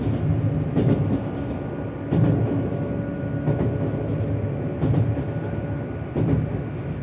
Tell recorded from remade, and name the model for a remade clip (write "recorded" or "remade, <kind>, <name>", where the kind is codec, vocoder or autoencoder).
recorded